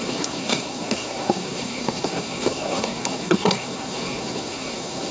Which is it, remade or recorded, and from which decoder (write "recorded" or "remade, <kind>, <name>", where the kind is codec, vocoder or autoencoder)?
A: remade, codec, SNAC